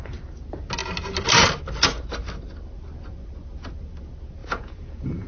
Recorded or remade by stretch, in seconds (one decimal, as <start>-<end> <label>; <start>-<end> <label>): 0.0-4.4 recorded; 4.4-5.3 remade